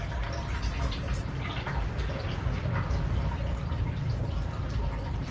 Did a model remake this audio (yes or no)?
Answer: no